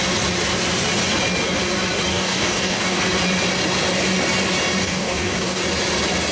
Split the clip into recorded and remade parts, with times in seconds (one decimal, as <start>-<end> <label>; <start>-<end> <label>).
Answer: 0.0-2.1 recorded; 2.1-3.0 remade; 3.0-4.8 recorded; 4.8-5.6 remade; 5.6-6.3 recorded